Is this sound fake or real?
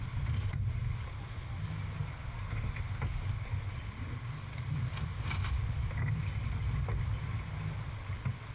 real